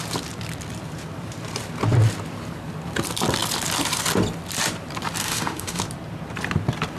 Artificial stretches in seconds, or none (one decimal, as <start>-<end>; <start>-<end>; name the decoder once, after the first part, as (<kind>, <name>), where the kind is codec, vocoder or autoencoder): 5.2-5.8 (autoencoder, DAC-VAE)

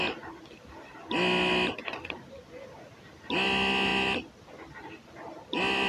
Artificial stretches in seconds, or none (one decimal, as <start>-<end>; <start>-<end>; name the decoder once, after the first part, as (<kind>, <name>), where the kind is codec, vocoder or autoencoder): none

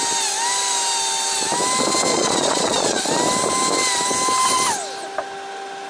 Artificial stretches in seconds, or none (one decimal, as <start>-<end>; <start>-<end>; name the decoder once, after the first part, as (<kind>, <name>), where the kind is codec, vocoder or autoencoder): 2.1-3.0 (vocoder, Vocos)

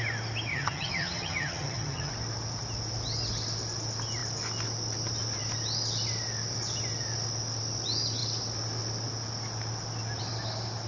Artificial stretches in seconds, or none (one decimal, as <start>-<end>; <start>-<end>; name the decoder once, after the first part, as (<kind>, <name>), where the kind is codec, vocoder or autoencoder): 0.5-2.1 (vocoder, HiFi-GAN)